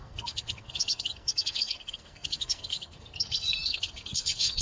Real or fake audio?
fake